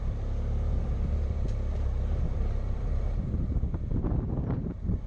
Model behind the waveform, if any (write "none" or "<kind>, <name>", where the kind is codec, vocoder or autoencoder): vocoder, BigVGAN v2